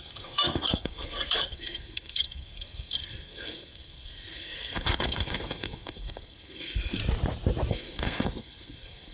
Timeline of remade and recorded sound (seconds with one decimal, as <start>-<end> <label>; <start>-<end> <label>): 0.0-7.0 remade; 7.0-7.7 recorded; 7.7-9.1 remade